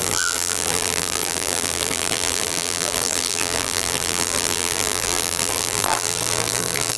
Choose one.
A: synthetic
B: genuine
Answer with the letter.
A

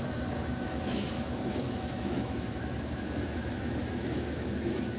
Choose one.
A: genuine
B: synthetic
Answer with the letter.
B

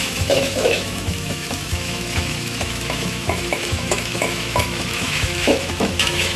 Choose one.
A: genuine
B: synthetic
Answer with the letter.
B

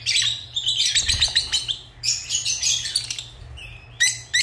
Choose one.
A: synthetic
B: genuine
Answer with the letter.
B